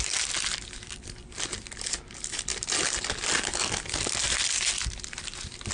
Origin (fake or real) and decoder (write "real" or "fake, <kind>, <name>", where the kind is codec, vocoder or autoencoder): real